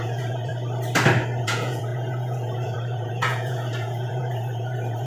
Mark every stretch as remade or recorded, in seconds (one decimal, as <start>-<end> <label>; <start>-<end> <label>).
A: 0.0-0.5 remade; 0.5-1.4 recorded; 1.4-5.1 remade